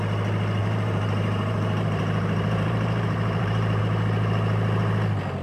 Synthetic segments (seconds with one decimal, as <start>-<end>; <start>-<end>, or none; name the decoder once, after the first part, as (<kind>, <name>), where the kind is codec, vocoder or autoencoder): 0.6-3.8 (vocoder, BigVGAN v2)